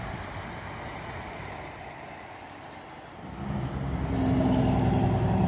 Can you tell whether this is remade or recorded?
recorded